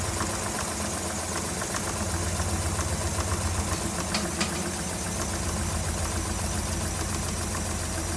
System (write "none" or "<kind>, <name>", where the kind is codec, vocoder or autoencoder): none